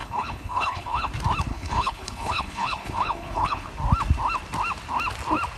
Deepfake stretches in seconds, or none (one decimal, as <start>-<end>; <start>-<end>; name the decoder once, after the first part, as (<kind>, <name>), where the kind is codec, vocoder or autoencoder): 0.0-1.1 (codec, HILCodec); 1.5-3.7